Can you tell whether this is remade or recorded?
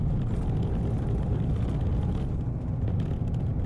recorded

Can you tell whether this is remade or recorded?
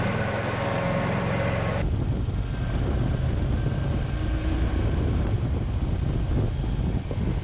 recorded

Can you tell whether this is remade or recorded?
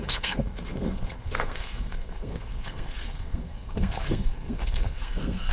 remade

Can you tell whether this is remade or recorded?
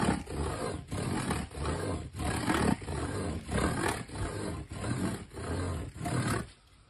recorded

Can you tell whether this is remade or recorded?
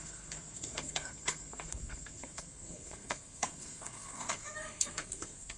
remade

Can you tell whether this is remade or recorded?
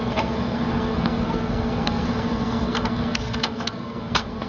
remade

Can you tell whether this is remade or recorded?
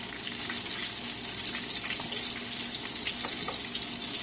recorded